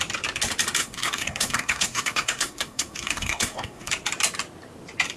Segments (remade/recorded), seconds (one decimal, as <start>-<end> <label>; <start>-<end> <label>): 0.0-0.8 recorded; 0.8-3.9 remade; 3.9-5.2 recorded